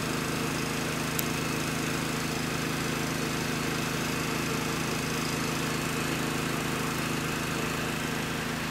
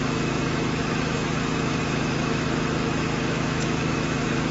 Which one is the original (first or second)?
first